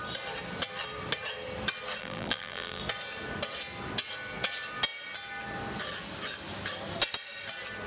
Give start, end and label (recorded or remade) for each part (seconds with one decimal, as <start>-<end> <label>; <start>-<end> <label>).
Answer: 0.0-2.0 recorded; 2.0-2.8 remade; 2.8-7.9 recorded